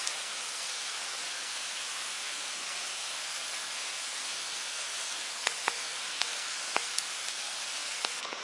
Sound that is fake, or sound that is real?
fake